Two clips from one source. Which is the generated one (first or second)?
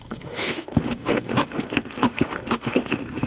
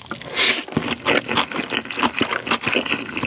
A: first